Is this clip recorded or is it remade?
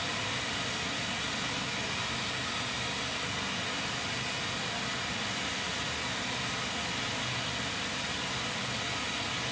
recorded